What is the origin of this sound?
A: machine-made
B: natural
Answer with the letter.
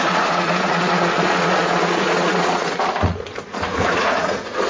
A